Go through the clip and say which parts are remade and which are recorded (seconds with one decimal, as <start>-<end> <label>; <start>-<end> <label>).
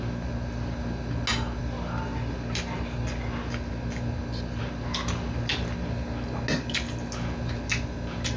0.0-8.4 recorded